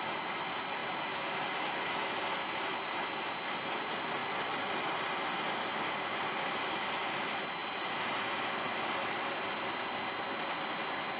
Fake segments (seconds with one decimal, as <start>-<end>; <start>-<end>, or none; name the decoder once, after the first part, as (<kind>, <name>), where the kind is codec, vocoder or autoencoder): none